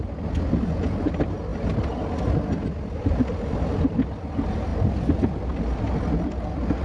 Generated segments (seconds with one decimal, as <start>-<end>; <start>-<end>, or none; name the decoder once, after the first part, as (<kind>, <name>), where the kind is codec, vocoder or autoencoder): none